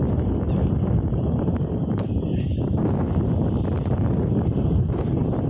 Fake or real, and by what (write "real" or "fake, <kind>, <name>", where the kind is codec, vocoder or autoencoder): real